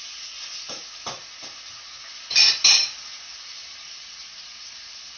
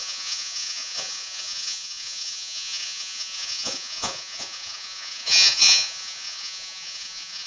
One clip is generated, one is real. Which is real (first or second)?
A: first